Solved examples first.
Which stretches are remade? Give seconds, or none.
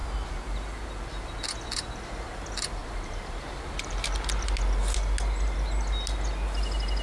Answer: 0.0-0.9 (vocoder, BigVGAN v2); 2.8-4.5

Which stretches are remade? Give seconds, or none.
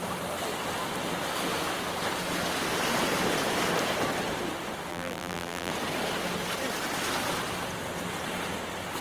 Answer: 4.9-5.7 (vocoder, BigVGAN v2)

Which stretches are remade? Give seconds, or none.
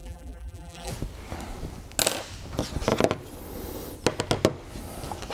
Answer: 0.0-0.9 (vocoder, BigVGAN v2)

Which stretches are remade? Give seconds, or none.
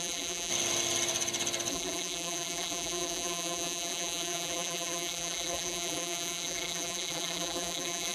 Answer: 0.0-0.5 (vocoder, BigVGAN v2); 1.7-8.1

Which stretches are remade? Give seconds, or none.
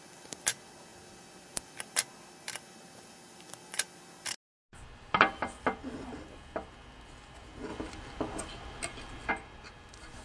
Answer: 7.7-9.3 (vocoder, BigVGAN v2)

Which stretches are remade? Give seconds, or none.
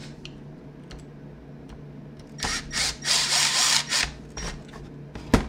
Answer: 0.0-0.6 (vocoder, BigVGAN v2)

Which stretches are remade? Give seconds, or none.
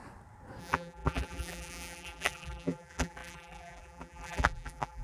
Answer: 0.6-5.0 (vocoder, BigVGAN v2)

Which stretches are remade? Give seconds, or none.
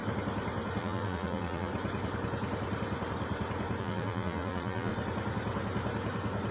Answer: 0.8-1.7 (vocoder, BigVGAN v2); 3.8-4.9